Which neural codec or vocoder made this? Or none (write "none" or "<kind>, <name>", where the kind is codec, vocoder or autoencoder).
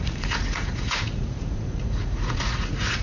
vocoder, Vocos